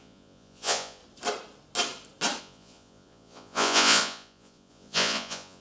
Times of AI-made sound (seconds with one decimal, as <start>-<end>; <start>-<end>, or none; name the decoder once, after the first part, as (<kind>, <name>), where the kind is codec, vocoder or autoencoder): 0.0-1.0 (vocoder, Vocos); 2.4-5.6